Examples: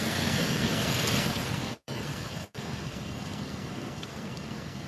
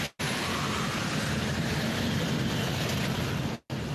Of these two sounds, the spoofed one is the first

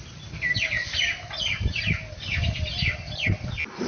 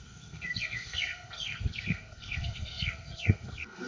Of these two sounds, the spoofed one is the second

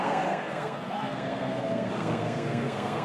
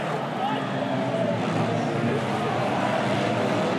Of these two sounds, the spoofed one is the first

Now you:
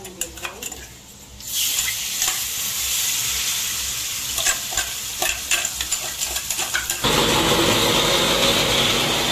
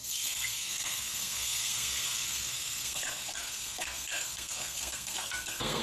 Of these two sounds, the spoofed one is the second